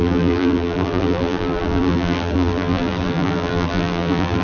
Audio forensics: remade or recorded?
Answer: remade